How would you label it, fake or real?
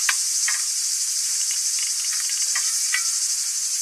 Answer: fake